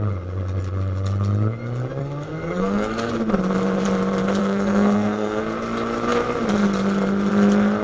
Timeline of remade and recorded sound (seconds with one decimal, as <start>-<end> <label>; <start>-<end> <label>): 0.0-2.0 recorded; 2.0-3.1 remade; 3.1-4.4 recorded; 4.4-5.4 remade; 5.4-7.8 recorded